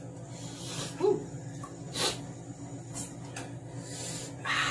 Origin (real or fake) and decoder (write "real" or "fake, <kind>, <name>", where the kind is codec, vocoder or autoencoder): real